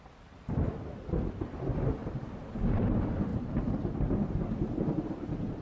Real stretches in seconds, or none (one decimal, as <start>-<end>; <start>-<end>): 0.0-2.0; 2.6-3.3